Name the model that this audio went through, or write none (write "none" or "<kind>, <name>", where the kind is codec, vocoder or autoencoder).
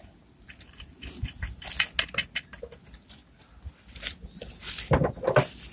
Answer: none